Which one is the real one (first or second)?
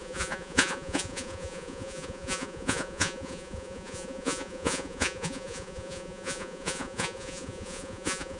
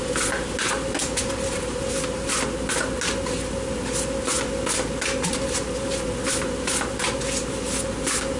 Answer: second